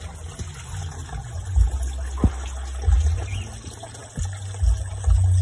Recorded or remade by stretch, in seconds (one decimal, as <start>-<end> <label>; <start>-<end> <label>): 0.0-5.4 recorded